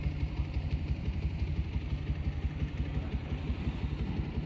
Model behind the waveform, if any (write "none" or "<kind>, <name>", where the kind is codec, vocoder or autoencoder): none